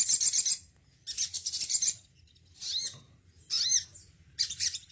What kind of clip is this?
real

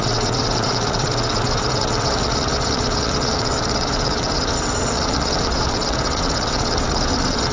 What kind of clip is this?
fake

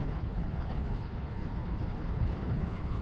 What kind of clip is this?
fake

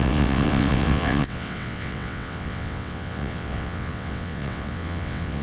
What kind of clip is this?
fake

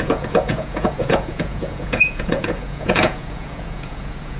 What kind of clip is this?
fake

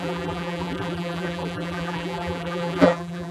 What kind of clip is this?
fake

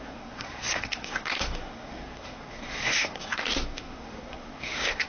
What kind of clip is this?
fake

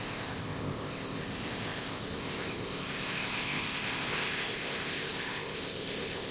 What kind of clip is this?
fake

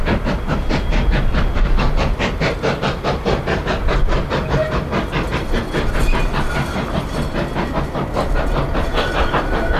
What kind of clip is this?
real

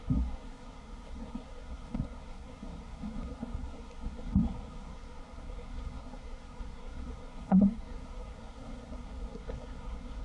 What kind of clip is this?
fake